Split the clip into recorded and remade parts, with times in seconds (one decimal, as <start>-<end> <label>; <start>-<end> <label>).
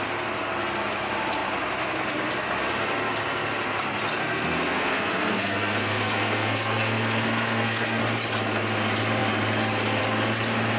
0.0-4.2 recorded; 4.2-8.0 remade; 8.0-10.8 recorded